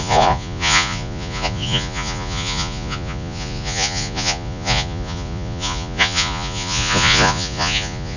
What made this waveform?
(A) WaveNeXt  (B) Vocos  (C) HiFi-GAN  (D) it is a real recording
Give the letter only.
B